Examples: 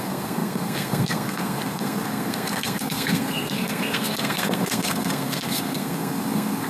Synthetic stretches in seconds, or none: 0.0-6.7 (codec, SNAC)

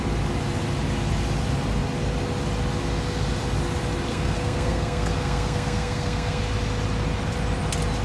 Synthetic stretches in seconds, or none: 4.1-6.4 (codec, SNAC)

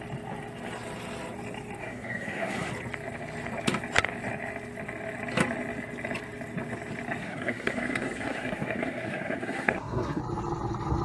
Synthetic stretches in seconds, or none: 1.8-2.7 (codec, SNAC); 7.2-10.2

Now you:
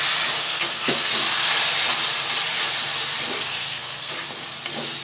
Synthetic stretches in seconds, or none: 0.4-1.1 (codec, SNAC); 3.5-4.1

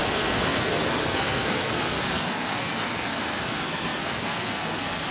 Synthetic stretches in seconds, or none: 0.0-5.1 (codec, SNAC)

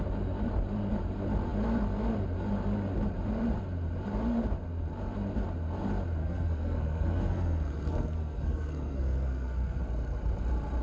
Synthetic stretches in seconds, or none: 6.2-9.8 (codec, SNAC)

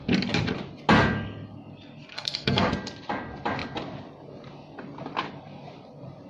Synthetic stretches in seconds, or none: 2.1-2.7 (codec, SNAC)